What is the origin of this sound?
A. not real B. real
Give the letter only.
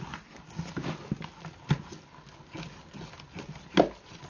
B